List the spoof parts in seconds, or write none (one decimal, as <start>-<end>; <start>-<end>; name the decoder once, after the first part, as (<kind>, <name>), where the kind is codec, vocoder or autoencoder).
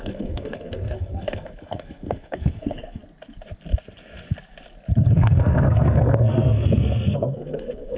0.0-3.0 (codec, SNAC); 5.1-8.0